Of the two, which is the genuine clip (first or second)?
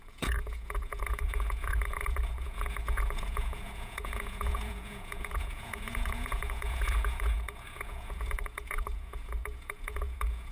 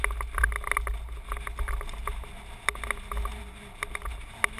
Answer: second